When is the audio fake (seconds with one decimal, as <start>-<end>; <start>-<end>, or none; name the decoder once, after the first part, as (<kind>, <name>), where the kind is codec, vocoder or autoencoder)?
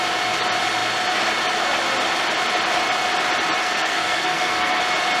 3.6-4.8 (codec, SNAC)